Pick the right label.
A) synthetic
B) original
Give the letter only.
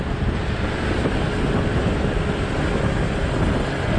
B